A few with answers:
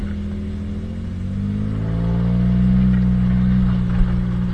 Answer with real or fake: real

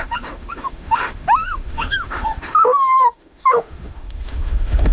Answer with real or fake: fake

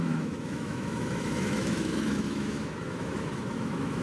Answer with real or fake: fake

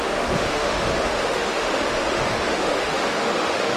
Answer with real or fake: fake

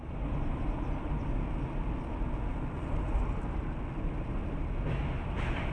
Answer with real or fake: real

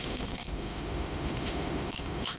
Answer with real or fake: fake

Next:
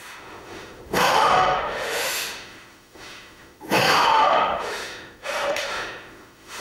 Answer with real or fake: fake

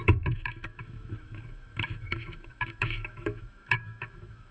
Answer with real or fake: fake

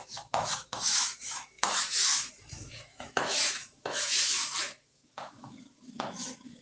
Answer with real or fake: fake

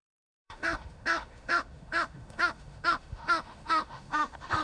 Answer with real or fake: fake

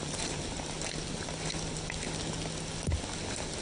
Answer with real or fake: real